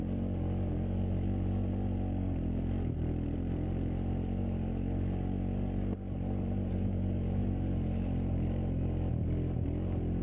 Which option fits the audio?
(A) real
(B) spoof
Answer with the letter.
A